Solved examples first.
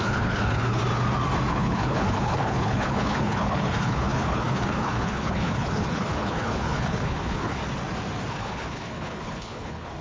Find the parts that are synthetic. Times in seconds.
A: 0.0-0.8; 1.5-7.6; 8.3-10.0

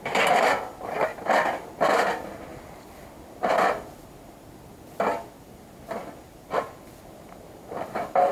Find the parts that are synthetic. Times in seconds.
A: none

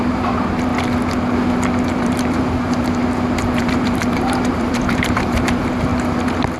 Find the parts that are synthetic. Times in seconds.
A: 0.0-0.7; 2.0-3.0; 3.6-5.9